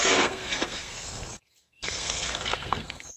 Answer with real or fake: fake